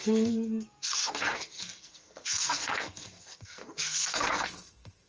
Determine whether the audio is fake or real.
fake